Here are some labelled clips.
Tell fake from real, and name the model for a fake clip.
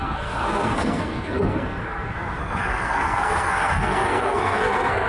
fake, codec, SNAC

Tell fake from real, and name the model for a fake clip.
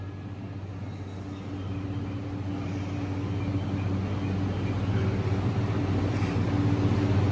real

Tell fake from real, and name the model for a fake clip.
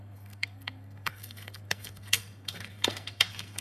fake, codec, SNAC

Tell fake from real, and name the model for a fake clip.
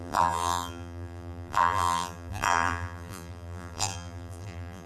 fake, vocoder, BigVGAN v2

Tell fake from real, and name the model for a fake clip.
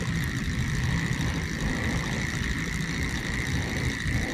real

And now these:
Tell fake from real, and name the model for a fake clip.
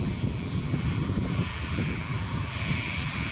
fake, vocoder, BigVGAN v2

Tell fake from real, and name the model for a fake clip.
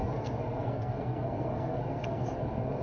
fake, codec, SNAC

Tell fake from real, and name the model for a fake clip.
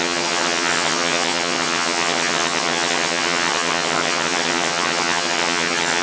fake, vocoder, HiFi-GAN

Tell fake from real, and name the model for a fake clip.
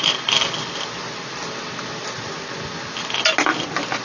real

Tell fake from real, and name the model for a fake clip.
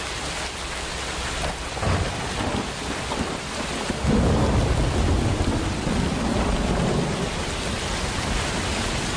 real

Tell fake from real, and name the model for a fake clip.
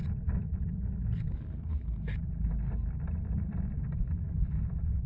real